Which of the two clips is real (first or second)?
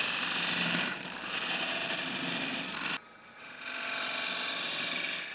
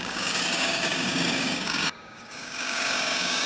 first